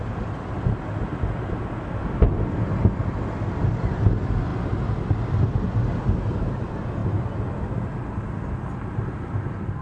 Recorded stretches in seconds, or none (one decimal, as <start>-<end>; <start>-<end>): 0.0-2.0; 2.6-9.8